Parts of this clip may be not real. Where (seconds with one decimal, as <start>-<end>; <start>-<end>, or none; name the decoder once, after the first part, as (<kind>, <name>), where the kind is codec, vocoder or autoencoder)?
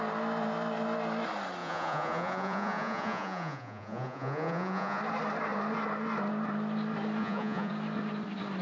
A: 1.6-5.0 (vocoder, Vocos); 7.2-7.7